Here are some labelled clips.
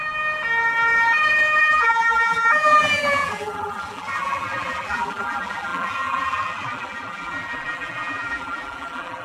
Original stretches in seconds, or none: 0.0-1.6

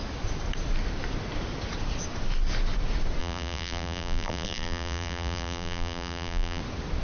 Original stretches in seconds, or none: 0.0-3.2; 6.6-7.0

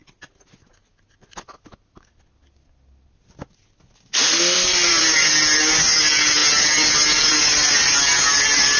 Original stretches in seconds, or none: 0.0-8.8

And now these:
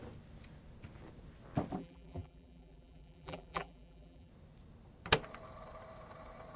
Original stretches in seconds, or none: 0.0-1.8; 4.3-6.6

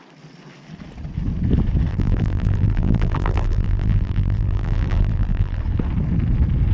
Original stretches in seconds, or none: 0.0-1.9; 5.6-6.7